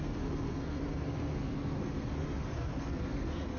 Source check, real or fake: fake